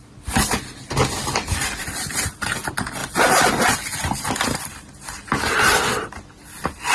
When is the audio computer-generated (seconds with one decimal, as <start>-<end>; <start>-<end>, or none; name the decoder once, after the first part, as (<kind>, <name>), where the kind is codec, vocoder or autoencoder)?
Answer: 1.8-2.5 (vocoder, BigVGAN v2); 3.0-4.9

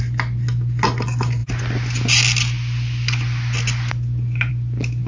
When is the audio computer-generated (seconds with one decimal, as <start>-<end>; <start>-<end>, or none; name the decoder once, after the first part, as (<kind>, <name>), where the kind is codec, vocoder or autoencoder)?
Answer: none

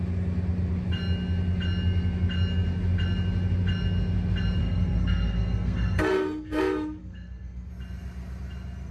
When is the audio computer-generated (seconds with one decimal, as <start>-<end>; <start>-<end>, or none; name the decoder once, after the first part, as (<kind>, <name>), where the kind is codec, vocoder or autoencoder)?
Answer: 4.6-6.6 (codec, SNAC); 7.0-7.7

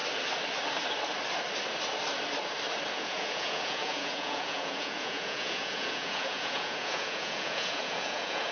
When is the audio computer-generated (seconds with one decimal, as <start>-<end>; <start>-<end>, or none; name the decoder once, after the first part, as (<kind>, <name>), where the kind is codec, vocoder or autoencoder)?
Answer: 2.9-8.5 (vocoder, Vocos)

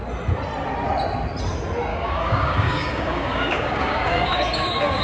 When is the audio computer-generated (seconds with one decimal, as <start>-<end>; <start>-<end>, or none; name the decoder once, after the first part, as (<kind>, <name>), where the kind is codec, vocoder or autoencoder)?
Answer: 1.9-5.0 (codec, DAC)

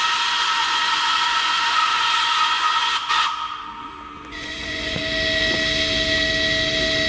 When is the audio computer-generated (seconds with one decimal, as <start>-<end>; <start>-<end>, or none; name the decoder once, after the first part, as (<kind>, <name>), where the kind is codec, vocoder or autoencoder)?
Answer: 0.6-3.3 (vocoder, Vocos); 4.2-5.0

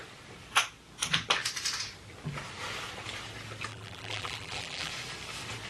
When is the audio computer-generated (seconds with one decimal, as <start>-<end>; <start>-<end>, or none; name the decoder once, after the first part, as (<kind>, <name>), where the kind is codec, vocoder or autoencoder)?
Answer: 3.7-4.9 (vocoder, BigVGAN v2)